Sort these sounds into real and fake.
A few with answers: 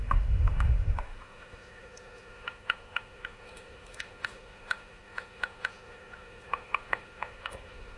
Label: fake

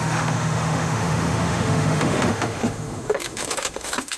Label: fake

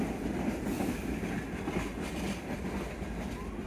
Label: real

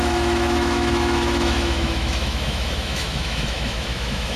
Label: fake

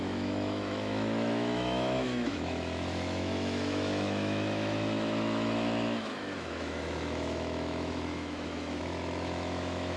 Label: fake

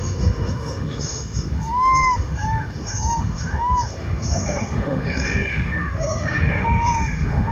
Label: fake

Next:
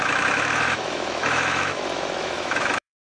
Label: fake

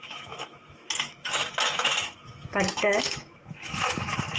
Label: fake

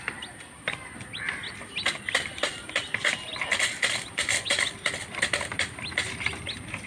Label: real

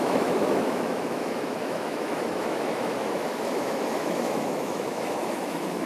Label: fake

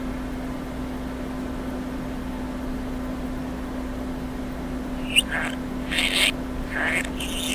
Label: real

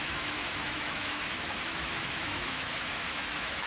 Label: fake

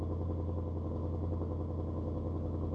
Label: real